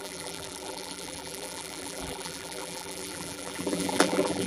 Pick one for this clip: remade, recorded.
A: remade